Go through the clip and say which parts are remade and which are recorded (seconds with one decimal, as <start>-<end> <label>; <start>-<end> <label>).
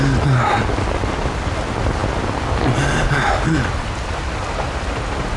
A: 0.0-5.4 recorded